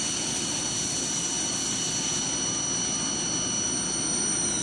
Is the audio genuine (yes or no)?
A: yes